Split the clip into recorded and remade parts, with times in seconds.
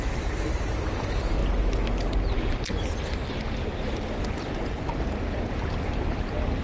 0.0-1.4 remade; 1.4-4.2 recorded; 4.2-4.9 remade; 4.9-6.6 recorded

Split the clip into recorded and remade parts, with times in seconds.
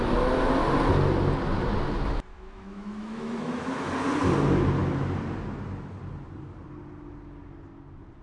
0.0-2.3 recorded; 2.3-3.9 remade; 3.9-8.2 recorded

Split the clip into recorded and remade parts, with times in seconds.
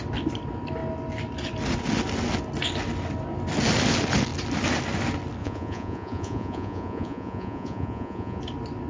0.0-5.4 recorded; 5.4-8.4 remade; 8.4-8.9 recorded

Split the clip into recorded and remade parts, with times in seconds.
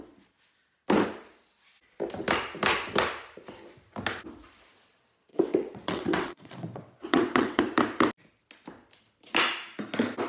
0.0-5.3 recorded; 5.3-7.6 remade; 7.6-10.3 recorded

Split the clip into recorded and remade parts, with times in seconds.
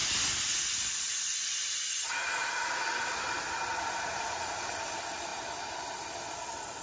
0.0-6.8 recorded